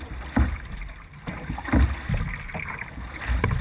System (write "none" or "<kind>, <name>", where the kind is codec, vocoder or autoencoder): none